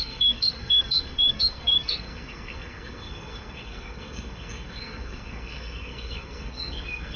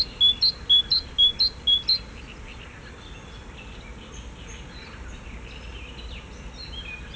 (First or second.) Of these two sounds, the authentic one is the second